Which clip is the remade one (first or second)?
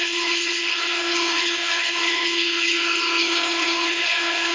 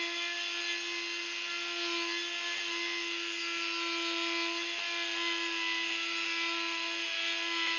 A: first